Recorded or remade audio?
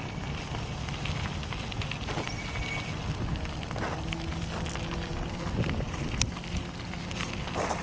recorded